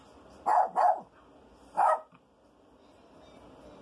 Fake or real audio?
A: real